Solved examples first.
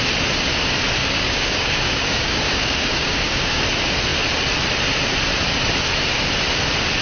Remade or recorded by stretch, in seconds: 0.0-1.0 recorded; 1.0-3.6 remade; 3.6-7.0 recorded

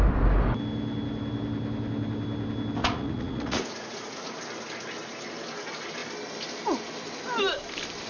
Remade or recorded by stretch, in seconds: 0.0-2.8 recorded; 2.8-4.4 remade; 4.4-8.1 recorded

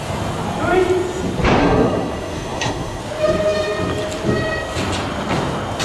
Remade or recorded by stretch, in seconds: 0.0-1.6 recorded; 1.6-3.0 remade; 3.0-5.8 recorded

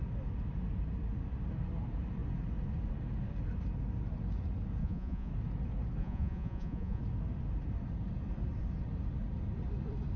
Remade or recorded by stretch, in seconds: 0.0-4.8 recorded; 4.8-5.3 remade; 5.3-6.0 recorded; 6.0-7.0 remade; 7.0-10.2 recorded

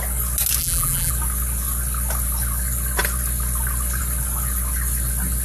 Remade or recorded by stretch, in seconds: 0.0-0.6 recorded; 0.6-1.1 remade; 1.1-5.4 recorded

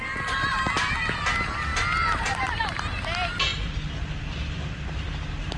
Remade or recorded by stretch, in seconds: 0.0-5.6 recorded